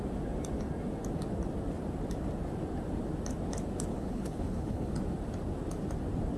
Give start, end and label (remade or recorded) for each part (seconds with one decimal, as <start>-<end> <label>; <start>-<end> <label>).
0.0-3.9 recorded; 3.9-4.9 remade; 4.9-6.4 recorded